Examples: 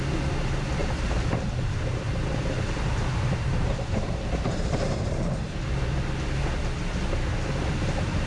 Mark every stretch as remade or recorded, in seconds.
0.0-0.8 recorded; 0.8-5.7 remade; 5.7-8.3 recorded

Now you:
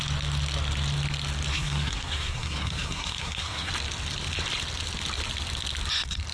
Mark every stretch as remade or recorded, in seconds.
0.0-1.5 recorded; 1.5-3.7 remade; 3.7-6.3 recorded

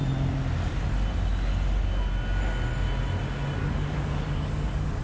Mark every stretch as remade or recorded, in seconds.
0.0-3.6 recorded; 3.6-5.0 remade

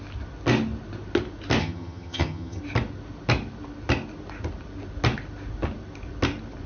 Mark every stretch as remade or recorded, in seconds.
0.0-1.6 recorded; 1.6-2.6 remade; 2.6-6.7 recorded

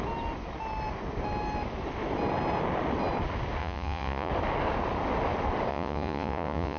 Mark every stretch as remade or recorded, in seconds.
0.0-3.6 recorded; 3.6-4.3 remade; 4.3-5.7 recorded; 5.7-6.8 remade

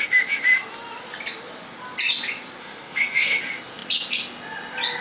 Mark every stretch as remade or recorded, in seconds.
0.0-2.6 recorded; 2.6-3.4 remade; 3.4-5.0 recorded

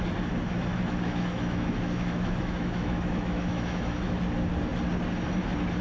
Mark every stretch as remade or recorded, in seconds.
0.0-0.7 recorded; 0.7-4.2 remade; 4.2-5.8 recorded

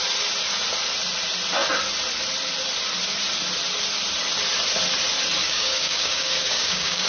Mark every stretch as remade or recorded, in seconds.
0.0-5.4 recorded; 5.4-7.1 remade